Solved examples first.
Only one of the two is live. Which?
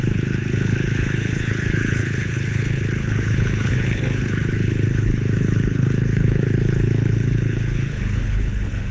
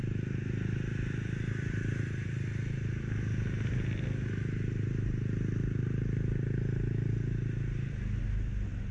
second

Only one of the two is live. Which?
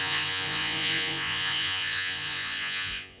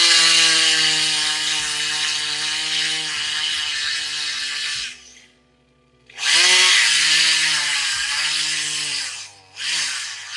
second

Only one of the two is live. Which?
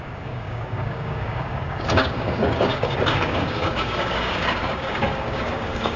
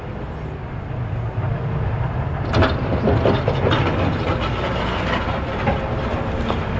second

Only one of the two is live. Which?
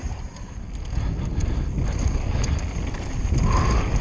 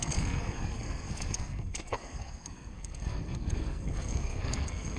first